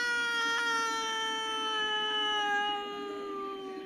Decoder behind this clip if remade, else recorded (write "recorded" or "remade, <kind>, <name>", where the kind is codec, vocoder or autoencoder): recorded